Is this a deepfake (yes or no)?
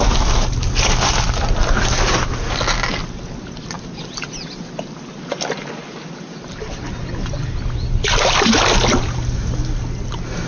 no